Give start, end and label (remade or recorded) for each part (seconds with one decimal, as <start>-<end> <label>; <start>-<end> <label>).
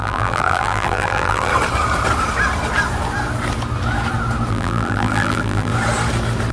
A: 0.0-1.5 remade; 1.5-4.5 recorded; 4.5-5.7 remade; 5.7-6.5 recorded